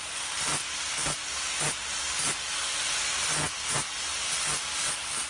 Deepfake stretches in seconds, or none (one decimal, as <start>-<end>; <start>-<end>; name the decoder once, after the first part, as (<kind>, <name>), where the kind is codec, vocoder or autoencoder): none

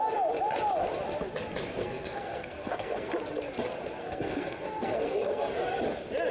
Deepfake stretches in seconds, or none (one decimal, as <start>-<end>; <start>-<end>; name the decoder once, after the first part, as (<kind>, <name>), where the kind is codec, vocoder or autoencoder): 1.8-3.1 (codec, SNAC); 4.0-5.4

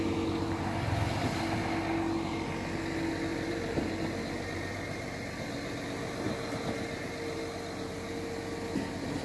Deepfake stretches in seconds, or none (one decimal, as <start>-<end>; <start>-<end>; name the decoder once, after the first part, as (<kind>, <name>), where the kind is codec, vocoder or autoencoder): 3.3-3.9 (vocoder, BigVGAN v2)

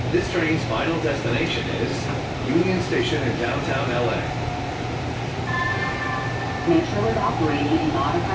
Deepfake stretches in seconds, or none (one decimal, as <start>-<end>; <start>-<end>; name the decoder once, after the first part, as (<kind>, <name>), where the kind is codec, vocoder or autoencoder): 1.9-3.0 (vocoder, BigVGAN v2)

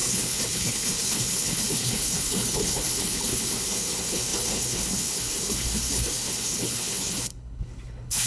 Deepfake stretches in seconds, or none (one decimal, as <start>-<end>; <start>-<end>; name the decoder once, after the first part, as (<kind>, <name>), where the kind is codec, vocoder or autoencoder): 0.0-8.3 (codec, HILCodec)

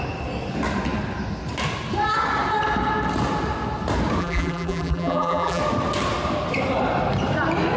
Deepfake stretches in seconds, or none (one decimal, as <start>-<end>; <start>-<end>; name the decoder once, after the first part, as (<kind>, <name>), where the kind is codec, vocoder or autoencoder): 4.2-5.6 (vocoder, BigVGAN v2)

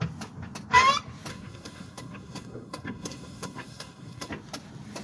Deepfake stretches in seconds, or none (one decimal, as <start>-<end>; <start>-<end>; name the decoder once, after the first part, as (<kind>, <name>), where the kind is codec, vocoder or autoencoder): 1.3-4.3 (codec, SNAC)

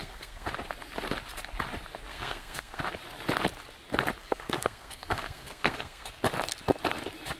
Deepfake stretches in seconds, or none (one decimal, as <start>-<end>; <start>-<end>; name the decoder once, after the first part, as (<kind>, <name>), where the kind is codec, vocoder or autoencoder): 0.0-0.5 (codec, SNAC); 2.1-2.8; 4.2-6.2